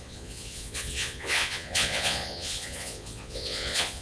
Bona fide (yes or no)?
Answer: no